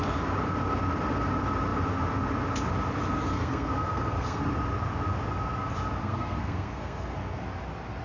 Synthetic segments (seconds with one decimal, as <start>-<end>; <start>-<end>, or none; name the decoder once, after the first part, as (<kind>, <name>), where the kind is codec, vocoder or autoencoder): 3.3-4.4 (codec, SNAC); 6.0-7.4